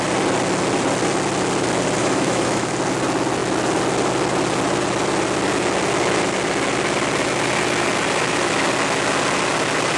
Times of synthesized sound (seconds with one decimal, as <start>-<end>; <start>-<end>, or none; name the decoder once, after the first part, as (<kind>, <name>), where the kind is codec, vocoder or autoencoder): 2.0-2.7 (autoencoder, DAC-VAE)